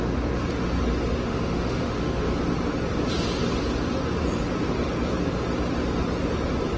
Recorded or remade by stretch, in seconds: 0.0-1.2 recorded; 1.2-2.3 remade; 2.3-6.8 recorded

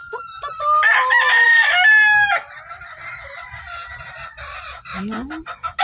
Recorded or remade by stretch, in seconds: 0.0-5.8 recorded